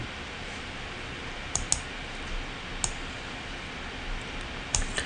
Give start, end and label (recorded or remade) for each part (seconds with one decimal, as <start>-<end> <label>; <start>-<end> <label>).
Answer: 0.0-1.7 remade; 1.7-4.6 recorded; 4.6-5.1 remade